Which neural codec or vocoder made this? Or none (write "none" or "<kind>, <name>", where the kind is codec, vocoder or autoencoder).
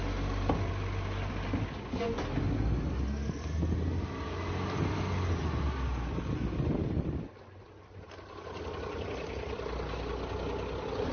none